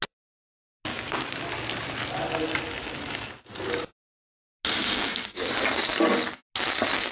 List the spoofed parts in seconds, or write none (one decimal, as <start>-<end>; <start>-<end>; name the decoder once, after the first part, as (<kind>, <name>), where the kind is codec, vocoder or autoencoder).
0.9-1.4 (codec, DAC); 4.8-5.5